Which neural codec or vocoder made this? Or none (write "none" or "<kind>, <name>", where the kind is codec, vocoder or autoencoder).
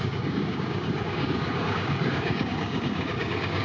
codec, DAC